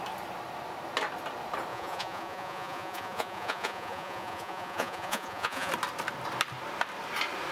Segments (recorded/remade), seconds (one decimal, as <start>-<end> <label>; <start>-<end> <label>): 0.0-1.7 recorded; 1.7-5.7 remade; 5.7-7.5 recorded